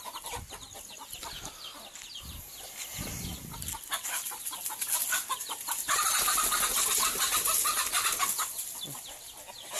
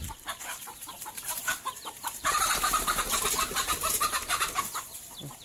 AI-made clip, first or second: second